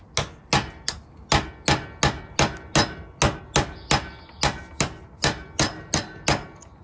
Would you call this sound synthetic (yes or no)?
no